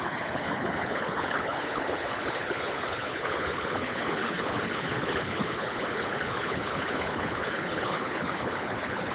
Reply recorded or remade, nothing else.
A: remade